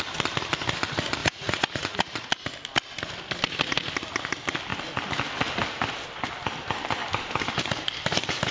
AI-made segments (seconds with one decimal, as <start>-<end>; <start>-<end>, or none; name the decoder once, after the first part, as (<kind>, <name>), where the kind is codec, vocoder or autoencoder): 1.2-2.3 (vocoder, Vocos)

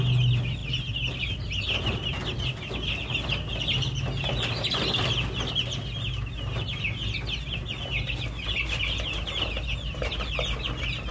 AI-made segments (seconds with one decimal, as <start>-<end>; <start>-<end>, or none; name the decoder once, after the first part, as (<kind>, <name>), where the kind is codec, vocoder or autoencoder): none

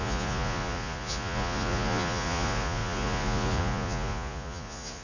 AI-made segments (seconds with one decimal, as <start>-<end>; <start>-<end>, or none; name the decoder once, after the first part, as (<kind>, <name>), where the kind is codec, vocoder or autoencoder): 0.0-5.0 (vocoder, Vocos)

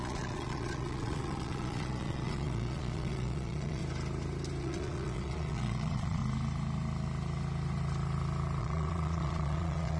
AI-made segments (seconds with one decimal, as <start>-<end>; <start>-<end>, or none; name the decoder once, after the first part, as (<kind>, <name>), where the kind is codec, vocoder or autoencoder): 0.0-3.8 (vocoder, Vocos); 4.6-6.2; 8.6-10.0

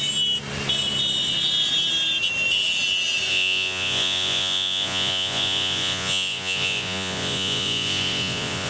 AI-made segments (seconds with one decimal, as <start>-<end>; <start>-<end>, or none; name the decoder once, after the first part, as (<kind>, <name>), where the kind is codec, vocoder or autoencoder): 3.3-8.7 (vocoder, Vocos)

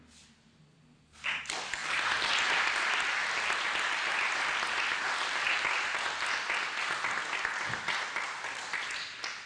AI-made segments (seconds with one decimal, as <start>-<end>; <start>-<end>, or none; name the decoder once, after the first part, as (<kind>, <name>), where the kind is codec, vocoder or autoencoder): none

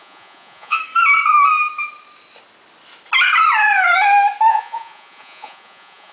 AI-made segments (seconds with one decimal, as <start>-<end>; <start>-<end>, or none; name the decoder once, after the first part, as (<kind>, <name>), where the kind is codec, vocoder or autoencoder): 0.0-0.8 (vocoder, Vocos); 4.5-6.1

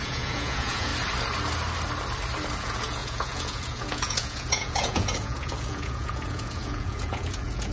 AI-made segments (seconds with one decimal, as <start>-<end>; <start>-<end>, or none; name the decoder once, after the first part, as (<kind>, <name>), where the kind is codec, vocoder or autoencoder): 0.0-0.9 (vocoder, Vocos); 2.6-7.7